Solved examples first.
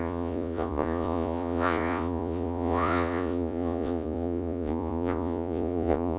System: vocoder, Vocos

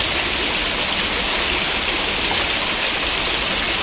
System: none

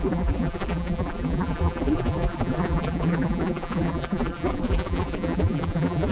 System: vocoder, BigVGAN v2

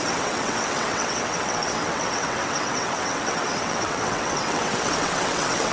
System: vocoder, WaveNeXt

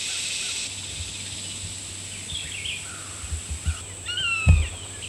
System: none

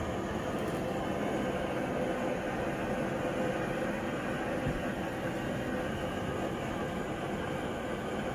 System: none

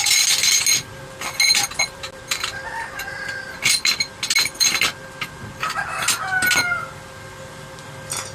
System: none